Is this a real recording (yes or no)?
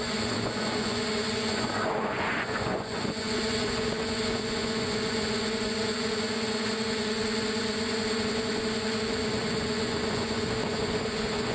no